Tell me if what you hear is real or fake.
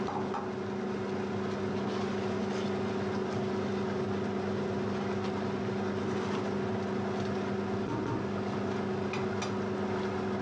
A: real